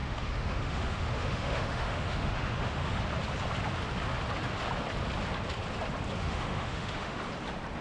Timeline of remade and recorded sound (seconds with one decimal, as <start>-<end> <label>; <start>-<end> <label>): 0.0-3.0 remade; 3.0-6.2 recorded; 6.2-7.2 remade; 7.2-7.8 recorded